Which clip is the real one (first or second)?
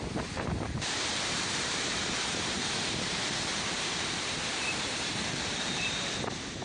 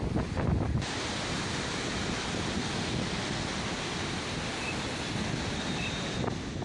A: second